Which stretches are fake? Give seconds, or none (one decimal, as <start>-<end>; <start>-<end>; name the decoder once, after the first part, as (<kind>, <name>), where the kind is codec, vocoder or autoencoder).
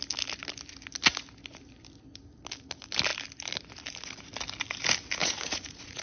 5.2-6.0 (vocoder, Vocos)